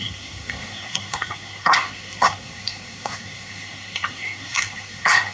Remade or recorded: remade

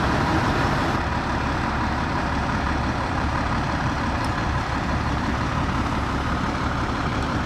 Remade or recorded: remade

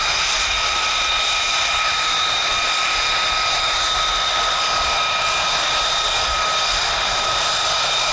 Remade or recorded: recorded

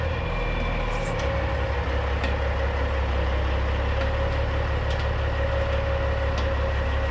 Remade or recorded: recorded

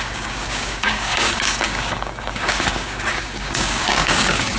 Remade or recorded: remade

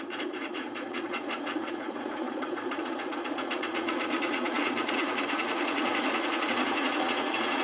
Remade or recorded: remade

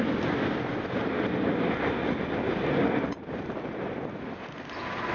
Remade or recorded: recorded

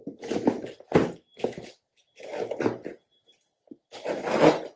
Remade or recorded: recorded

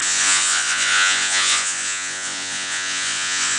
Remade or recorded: remade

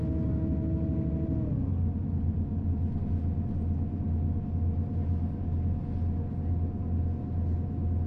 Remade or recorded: recorded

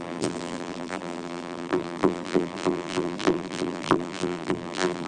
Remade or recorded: remade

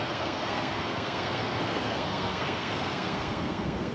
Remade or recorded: remade